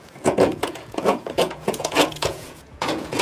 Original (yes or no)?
no